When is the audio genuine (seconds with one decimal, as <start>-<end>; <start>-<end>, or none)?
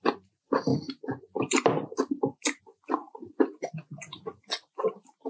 0.0-5.3